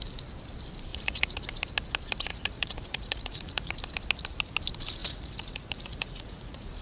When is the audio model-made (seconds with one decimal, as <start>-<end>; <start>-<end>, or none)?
0.9-1.5; 2.3-3.7; 5.0-6.8